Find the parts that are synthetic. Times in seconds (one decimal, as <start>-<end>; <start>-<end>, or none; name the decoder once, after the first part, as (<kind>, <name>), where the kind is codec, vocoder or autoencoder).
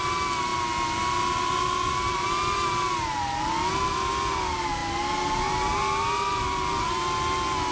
none